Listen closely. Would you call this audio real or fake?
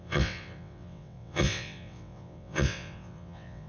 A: fake